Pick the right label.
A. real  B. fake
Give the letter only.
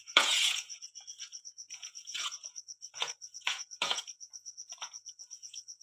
B